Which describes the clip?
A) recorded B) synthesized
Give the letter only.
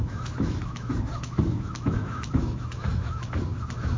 B